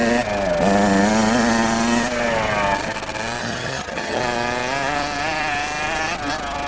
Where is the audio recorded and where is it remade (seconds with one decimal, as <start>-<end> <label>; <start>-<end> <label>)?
0.0-3.4 recorded; 3.4-4.2 remade; 4.2-6.7 recorded